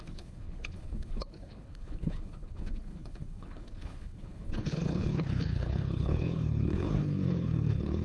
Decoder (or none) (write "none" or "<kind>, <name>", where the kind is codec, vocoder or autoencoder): codec, HILCodec